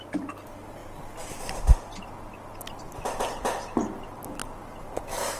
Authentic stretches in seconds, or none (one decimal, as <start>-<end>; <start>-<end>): 0.0-5.4